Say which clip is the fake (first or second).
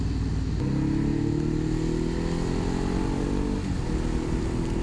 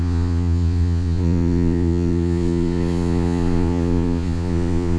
second